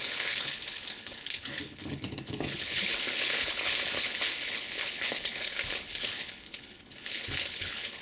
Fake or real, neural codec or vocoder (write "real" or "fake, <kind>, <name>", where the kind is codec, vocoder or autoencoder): fake, codec, HILCodec